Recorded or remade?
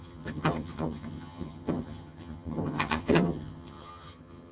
remade